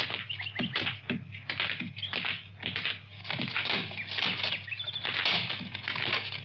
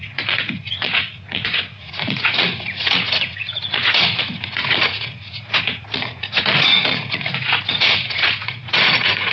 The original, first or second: first